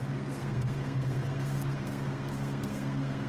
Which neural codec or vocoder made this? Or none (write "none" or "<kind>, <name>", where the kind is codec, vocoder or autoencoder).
codec, SNAC